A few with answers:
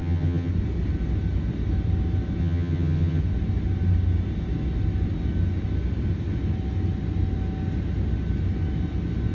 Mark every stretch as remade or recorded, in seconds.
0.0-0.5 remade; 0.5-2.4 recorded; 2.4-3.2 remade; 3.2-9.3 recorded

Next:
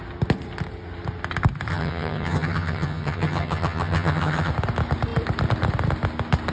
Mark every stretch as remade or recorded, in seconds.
0.0-1.7 recorded; 1.7-4.5 remade; 4.5-6.5 recorded

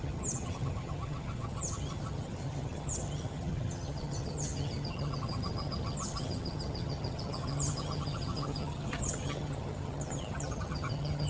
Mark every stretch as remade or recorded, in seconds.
0.0-11.3 remade

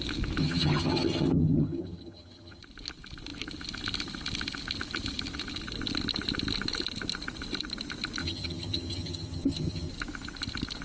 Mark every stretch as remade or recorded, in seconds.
0.0-0.4 recorded; 0.4-2.6 remade; 2.6-8.2 recorded; 8.2-9.9 remade; 9.9-10.8 recorded

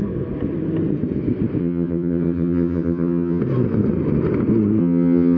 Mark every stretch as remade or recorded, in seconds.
0.0-1.6 recorded; 1.6-3.4 remade; 3.4-4.8 recorded; 4.8-5.4 remade

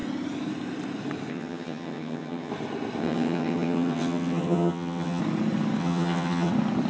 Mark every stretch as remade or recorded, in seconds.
0.0-1.3 recorded; 1.3-2.5 remade; 2.5-3.0 recorded; 3.0-5.2 remade; 5.2-5.8 recorded; 5.8-6.5 remade; 6.5-6.9 recorded

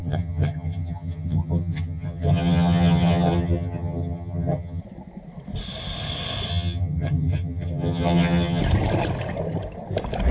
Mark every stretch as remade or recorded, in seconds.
0.0-4.8 remade; 4.8-6.5 recorded; 6.5-8.6 remade; 8.6-10.3 recorded

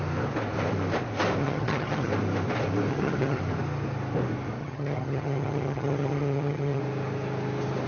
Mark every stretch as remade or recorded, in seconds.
0.0-1.4 recorded; 1.4-2.1 remade; 2.1-2.9 recorded; 2.9-3.4 remade; 3.4-4.6 recorded; 4.6-6.8 remade; 6.8-7.9 recorded